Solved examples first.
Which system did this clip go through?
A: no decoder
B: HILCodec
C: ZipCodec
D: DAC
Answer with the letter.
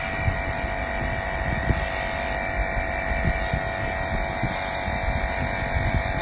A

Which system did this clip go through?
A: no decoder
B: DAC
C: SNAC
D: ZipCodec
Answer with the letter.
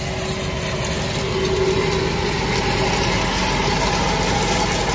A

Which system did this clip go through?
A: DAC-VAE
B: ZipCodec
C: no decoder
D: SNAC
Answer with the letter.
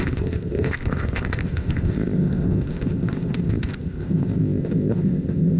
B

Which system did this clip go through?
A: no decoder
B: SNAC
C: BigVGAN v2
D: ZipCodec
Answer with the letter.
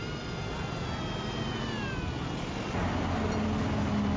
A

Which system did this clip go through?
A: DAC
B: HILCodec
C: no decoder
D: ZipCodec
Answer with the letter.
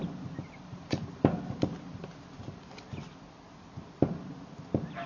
C